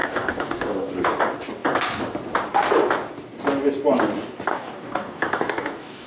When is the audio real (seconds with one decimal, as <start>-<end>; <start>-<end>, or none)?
0.9-4.5